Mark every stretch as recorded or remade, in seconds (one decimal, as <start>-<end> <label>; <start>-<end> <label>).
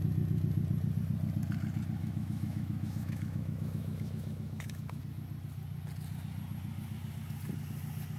0.0-2.0 recorded; 2.0-5.0 remade; 5.0-8.2 recorded